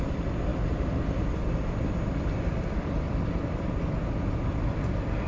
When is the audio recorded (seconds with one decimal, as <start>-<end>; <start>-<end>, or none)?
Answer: 0.0-0.5; 3.7-5.3